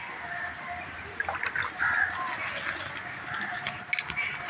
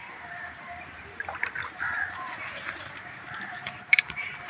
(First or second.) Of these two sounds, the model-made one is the second